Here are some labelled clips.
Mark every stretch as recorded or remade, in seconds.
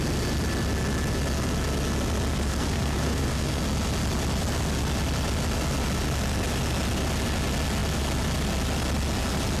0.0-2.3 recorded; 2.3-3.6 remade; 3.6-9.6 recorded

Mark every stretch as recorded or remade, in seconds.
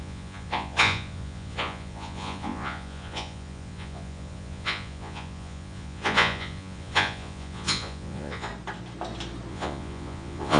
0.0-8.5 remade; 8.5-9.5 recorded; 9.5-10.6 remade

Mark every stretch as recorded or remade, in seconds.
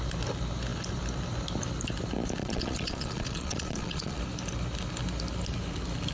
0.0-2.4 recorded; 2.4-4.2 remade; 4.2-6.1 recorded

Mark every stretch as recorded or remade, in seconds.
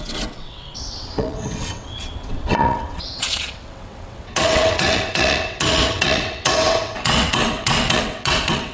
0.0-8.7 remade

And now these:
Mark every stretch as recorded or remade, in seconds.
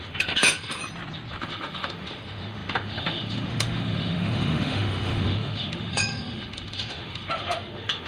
0.0-0.8 remade; 0.8-1.4 recorded; 1.4-8.1 remade